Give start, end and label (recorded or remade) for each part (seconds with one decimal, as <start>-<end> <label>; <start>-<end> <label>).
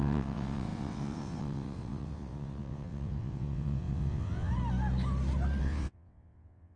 0.0-4.5 remade; 4.5-5.6 recorded; 5.6-6.8 remade